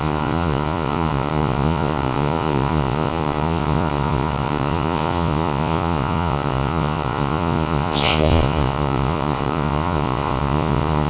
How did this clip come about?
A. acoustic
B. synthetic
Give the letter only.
B